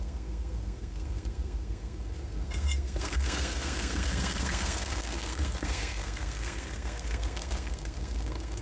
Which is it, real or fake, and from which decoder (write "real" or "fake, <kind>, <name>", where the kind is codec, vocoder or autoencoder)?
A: fake, codec, SNAC